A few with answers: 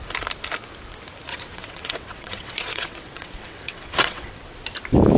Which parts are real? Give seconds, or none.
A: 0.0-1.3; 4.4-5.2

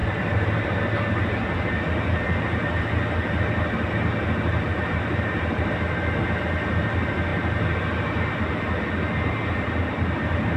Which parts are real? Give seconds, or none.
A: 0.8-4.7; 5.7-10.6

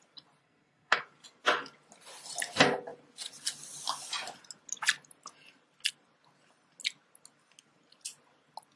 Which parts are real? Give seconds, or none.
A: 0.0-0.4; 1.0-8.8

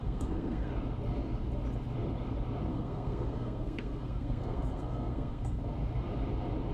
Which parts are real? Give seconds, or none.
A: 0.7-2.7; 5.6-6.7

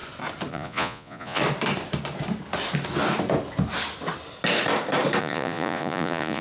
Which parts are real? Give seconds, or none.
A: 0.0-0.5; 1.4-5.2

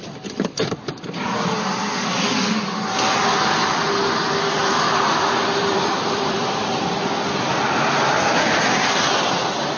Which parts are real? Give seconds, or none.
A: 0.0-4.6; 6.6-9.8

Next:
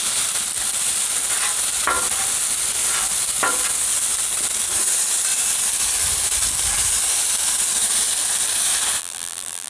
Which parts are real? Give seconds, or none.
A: 0.0-9.0

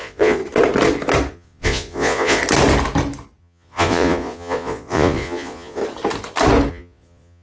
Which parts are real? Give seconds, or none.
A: 0.4-1.3; 2.4-3.4; 5.8-6.7